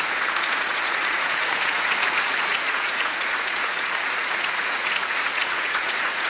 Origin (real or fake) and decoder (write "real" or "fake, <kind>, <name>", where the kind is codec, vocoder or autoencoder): fake, vocoder, Vocos